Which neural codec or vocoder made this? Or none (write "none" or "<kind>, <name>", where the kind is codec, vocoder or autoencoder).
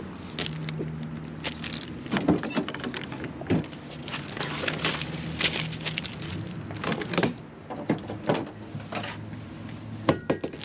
none